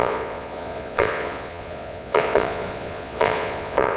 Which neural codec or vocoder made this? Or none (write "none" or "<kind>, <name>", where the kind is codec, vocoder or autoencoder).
vocoder, Vocos